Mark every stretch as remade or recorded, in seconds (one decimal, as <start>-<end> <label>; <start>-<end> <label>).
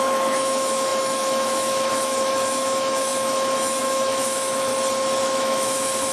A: 0.0-4.7 remade; 4.7-5.2 recorded; 5.2-6.1 remade